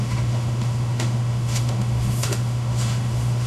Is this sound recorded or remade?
remade